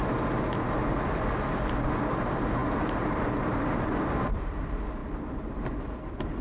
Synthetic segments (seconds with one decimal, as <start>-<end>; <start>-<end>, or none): 2.6-3.8